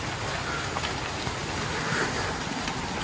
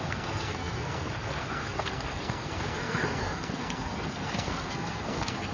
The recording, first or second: first